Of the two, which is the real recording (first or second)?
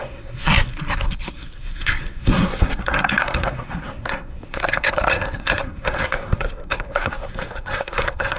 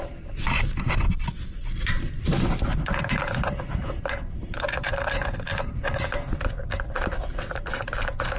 second